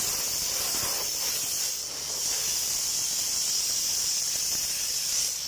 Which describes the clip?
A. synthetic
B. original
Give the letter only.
B